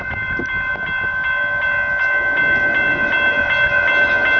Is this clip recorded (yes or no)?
yes